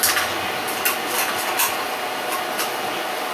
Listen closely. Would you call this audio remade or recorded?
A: recorded